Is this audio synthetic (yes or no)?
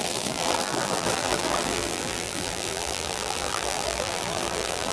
yes